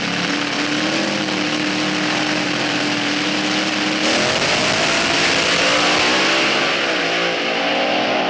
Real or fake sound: real